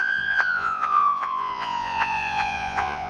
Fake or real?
fake